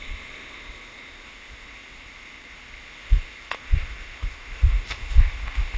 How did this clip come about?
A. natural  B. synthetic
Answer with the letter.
B